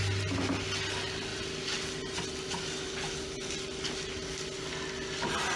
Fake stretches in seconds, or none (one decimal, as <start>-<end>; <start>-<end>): none